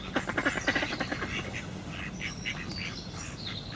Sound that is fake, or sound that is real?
real